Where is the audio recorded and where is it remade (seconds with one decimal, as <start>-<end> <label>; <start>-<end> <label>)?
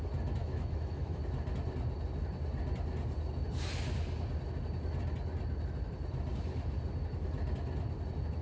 0.0-0.4 recorded; 0.4-1.2 remade; 1.2-8.4 recorded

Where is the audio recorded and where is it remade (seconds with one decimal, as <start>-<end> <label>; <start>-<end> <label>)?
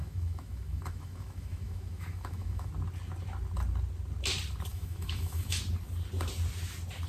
0.0-2.7 remade; 2.7-4.7 recorded; 4.7-5.6 remade; 5.6-7.1 recorded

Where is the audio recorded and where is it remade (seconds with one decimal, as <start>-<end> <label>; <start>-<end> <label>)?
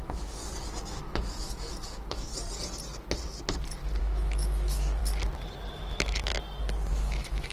0.0-0.4 remade; 0.4-0.9 recorded; 0.9-2.3 remade; 2.3-4.0 recorded; 4.0-5.0 remade; 5.0-5.7 recorded; 5.7-6.3 remade; 6.3-6.9 recorded; 6.9-7.5 remade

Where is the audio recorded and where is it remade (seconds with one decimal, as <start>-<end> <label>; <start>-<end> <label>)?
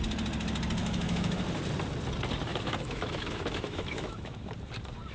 0.0-0.8 recorded; 0.8-1.4 remade; 1.4-2.5 recorded; 2.5-4.5 remade; 4.5-5.1 recorded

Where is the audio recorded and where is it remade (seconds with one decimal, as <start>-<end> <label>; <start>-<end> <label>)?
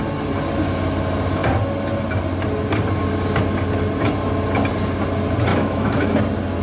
0.0-5.5 recorded; 5.5-6.1 remade; 6.1-6.6 recorded